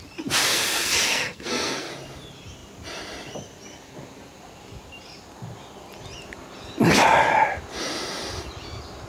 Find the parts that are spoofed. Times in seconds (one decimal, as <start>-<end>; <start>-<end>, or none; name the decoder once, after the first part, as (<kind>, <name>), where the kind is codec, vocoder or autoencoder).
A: 0.5-1.9 (codec, SNAC)

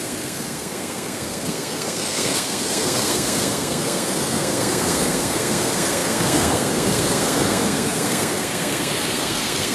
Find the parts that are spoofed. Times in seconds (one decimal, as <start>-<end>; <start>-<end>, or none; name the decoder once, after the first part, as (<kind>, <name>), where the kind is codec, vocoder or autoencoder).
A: 0.0-9.7 (codec, SNAC)

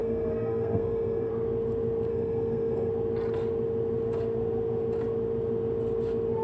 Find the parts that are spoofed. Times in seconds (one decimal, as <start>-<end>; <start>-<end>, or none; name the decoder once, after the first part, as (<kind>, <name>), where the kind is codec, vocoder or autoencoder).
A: 0.0-1.3 (codec, SNAC); 2.1-2.9

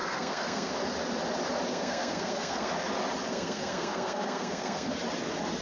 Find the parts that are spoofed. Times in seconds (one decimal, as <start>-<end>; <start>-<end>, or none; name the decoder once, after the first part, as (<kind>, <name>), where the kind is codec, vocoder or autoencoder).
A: 0.0-0.7 (codec, SNAC); 1.7-2.7; 3.3-4.9

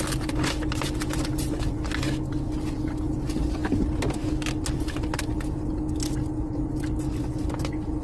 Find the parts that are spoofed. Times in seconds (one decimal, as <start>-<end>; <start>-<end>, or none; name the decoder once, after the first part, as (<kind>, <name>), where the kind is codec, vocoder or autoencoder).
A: none

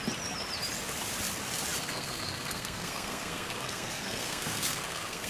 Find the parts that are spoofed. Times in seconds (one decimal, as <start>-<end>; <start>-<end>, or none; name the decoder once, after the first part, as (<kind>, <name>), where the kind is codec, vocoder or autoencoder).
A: 1.8-5.3 (codec, SNAC)

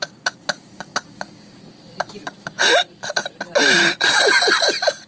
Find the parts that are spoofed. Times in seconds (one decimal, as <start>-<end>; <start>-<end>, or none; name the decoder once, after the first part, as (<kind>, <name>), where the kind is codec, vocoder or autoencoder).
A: none

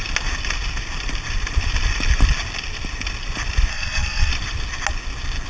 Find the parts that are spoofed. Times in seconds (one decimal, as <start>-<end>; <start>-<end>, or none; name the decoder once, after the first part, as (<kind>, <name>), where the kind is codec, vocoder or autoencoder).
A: 3.7-4.3 (codec, SNAC)